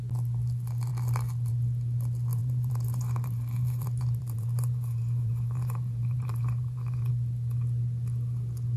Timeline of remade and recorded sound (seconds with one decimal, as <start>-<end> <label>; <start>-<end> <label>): 0.0-2.4 recorded; 2.4-7.1 remade; 7.1-8.8 recorded

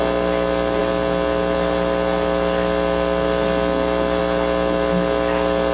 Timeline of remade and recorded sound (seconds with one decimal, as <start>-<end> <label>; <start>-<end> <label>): 0.0-5.7 recorded

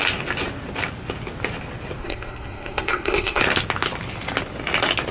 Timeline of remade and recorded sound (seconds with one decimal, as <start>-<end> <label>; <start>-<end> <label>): 0.0-2.0 recorded; 2.0-3.4 remade; 3.4-5.1 recorded